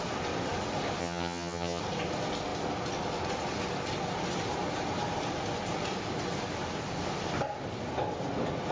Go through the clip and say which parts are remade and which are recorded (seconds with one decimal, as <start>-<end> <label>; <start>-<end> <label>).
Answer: 0.0-1.0 recorded; 1.0-1.8 remade; 1.8-8.7 recorded